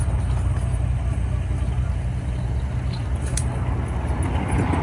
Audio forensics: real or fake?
real